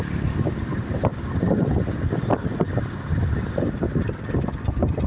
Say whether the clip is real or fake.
real